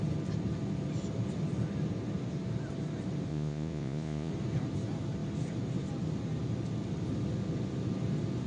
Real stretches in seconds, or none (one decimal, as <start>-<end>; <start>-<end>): 0.0-3.3; 4.3-8.5